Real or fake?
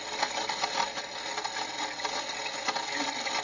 real